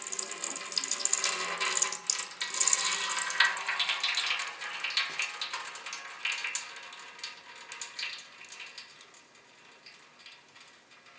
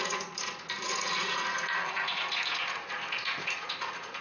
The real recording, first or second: first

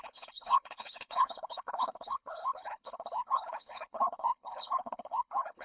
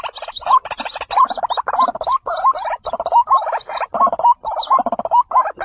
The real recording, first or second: second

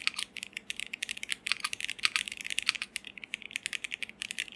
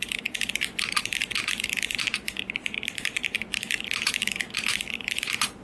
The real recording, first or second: first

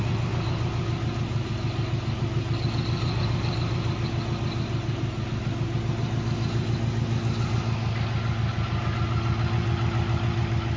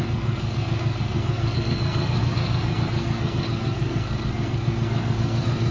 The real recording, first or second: first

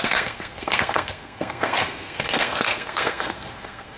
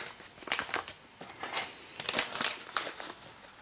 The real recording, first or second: second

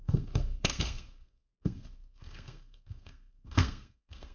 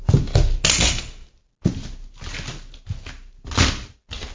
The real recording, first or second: second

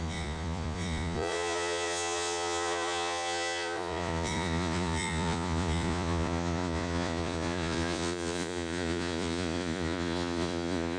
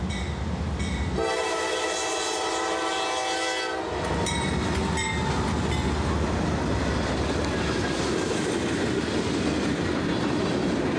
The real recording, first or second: second